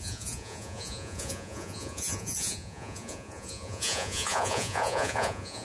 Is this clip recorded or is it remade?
remade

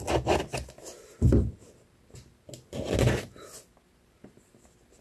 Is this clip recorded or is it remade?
recorded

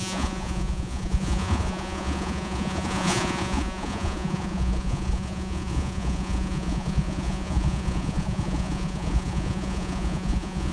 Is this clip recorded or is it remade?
remade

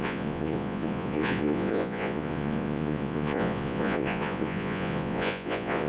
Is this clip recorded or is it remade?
remade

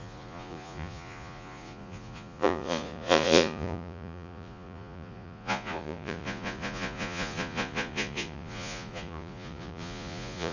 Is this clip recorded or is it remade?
remade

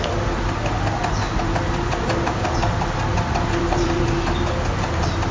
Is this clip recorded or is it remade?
recorded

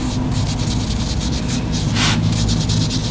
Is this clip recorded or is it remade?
recorded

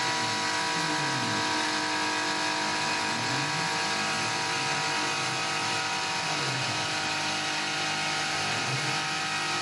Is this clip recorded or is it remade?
recorded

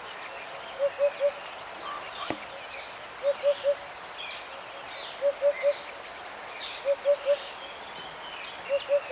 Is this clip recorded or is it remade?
recorded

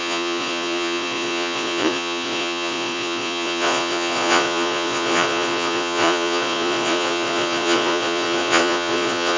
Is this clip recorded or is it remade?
remade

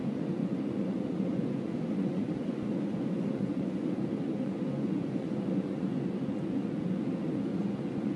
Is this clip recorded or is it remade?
remade